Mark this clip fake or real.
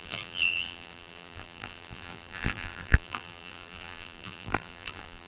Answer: fake